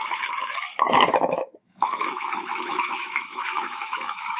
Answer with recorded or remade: remade